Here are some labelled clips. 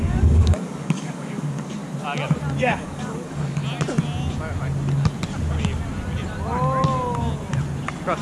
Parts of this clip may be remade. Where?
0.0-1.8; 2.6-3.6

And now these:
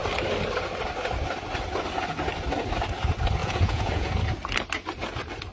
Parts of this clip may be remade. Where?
3.4-4.1

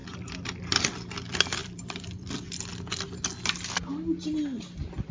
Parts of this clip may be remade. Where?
1.6-2.7

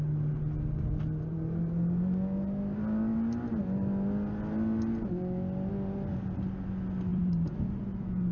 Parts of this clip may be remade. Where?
7.1-7.8